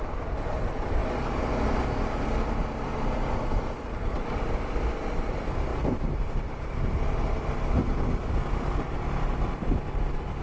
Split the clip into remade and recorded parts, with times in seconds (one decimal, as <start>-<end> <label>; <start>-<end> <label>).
0.0-2.9 recorded; 2.9-4.7 remade; 4.7-5.7 recorded; 5.7-6.9 remade; 6.9-10.4 recorded